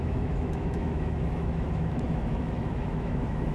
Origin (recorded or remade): remade